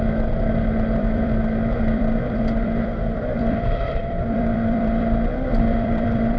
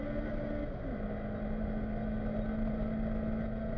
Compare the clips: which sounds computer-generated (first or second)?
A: first